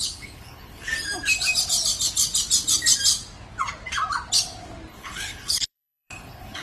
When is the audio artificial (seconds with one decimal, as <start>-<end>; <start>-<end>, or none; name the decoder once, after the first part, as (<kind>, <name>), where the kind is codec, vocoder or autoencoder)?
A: 0.0-0.9 (codec, HILCodec); 4.9-6.6